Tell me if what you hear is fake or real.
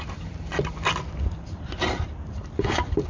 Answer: fake